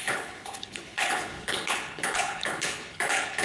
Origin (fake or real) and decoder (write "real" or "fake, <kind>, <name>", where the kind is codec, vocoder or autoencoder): fake, codec, HILCodec